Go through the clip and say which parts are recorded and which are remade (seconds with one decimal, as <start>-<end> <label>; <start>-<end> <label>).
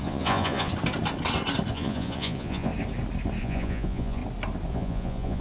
0.0-0.7 remade; 0.7-1.7 recorded; 1.7-2.7 remade; 2.7-3.4 recorded; 3.4-4.2 remade; 4.2-4.7 recorded; 4.7-5.4 remade